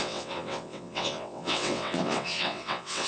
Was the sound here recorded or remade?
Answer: remade